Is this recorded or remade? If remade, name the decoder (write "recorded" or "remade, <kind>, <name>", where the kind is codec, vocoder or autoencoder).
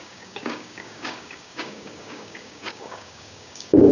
remade, codec, DAC